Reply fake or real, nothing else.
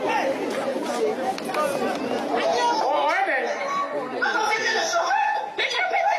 real